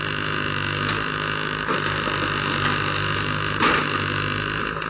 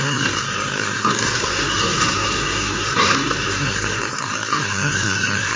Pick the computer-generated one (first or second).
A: second